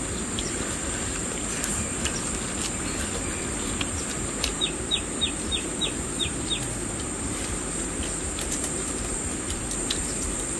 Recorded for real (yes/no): yes